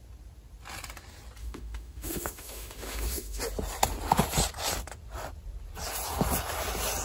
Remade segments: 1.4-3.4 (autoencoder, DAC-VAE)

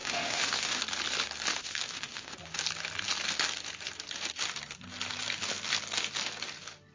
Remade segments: 0.0-0.8 (autoencoder, DAC-VAE); 1.5-2.3

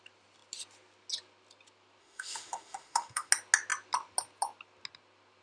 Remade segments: 2.0-3.3 (autoencoder, DAC-VAE)

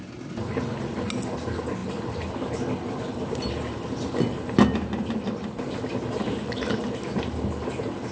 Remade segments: none

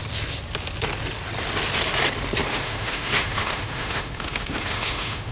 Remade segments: 2.5-5.3 (autoencoder, DAC-VAE)